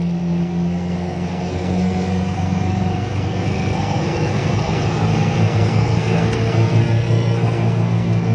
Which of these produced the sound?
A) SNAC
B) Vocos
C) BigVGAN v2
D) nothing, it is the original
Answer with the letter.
A